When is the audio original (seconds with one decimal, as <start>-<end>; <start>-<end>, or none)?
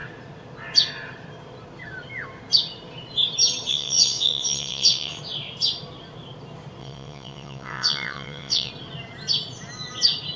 0.0-3.7; 5.2-6.8; 8.7-10.4